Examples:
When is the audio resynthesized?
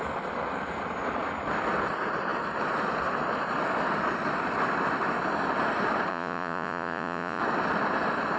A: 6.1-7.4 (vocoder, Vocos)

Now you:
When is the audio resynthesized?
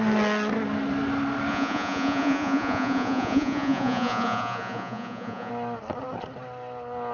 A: 1.5-5.5 (vocoder, Vocos)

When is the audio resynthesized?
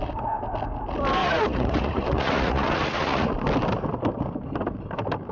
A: 1.2-3.3 (vocoder, Vocos)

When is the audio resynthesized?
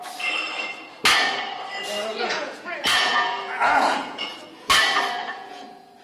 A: 2.1-4.7 (vocoder, Vocos); 5.2-6.0